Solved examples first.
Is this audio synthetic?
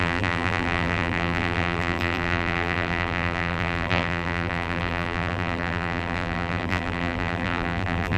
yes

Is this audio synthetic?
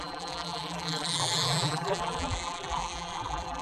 yes